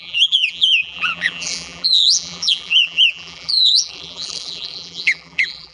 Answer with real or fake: fake